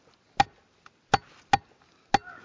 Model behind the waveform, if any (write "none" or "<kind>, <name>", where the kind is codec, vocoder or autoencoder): none